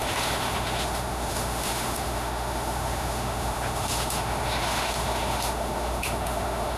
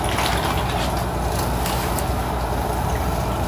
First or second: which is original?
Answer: second